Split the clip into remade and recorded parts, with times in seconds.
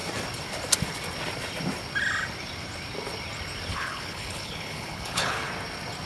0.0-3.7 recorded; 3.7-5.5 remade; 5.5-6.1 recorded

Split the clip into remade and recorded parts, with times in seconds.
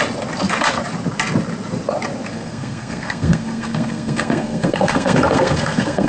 0.0-2.3 recorded; 2.3-6.1 remade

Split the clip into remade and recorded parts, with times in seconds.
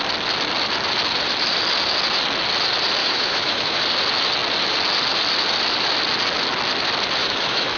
0.0-3.0 recorded; 3.0-3.8 remade; 3.8-7.2 recorded; 7.2-7.8 remade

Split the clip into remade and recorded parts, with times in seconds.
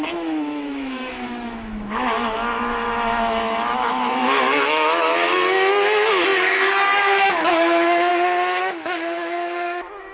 0.0-8.1 remade; 8.1-8.6 recorded; 8.6-10.1 remade